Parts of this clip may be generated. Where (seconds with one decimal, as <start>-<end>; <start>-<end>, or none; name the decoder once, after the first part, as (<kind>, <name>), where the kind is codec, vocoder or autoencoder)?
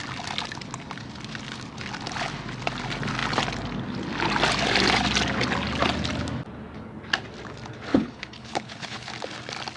7.9-9.1 (codec, HILCodec)